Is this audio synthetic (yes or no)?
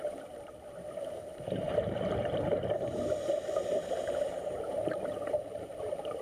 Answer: yes